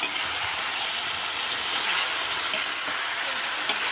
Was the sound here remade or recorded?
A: recorded